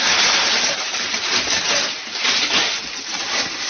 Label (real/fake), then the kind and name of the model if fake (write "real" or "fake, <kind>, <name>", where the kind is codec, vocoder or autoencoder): real